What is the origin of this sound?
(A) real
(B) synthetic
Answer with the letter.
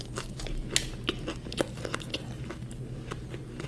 A